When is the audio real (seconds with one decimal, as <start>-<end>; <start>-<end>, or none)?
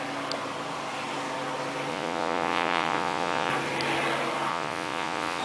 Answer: 0.0-1.9; 3.5-4.5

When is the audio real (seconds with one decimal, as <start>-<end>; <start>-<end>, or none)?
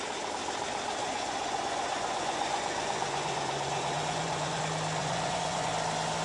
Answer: 0.0-1.0; 4.6-5.0; 5.7-6.2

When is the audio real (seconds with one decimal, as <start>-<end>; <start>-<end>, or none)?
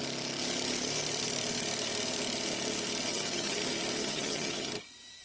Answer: 0.0-3.1; 3.6-4.0; 4.7-5.2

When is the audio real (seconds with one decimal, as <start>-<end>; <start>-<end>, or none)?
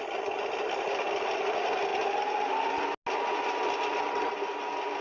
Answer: 0.0-5.0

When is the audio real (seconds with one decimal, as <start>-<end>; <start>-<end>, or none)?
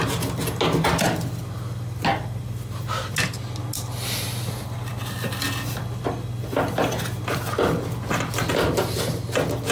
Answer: 0.0-9.7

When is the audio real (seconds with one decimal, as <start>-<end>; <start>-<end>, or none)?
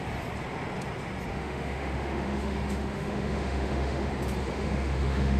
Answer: 0.0-1.3; 4.1-4.5